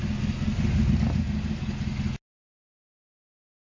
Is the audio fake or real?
real